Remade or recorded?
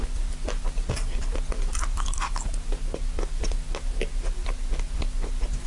recorded